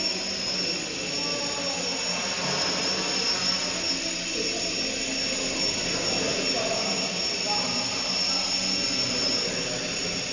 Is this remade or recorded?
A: recorded